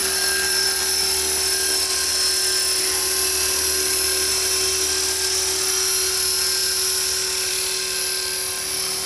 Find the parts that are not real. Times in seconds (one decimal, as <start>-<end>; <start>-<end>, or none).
0.0-0.8